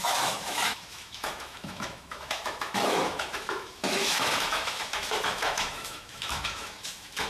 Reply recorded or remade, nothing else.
remade